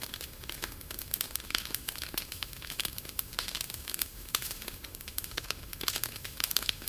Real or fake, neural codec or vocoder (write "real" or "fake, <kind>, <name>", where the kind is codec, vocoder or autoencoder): fake, autoencoder, DAC-VAE